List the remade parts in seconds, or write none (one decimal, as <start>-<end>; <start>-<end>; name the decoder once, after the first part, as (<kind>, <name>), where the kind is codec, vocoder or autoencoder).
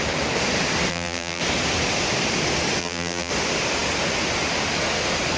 0.9-1.4 (vocoder, BigVGAN v2); 2.8-3.3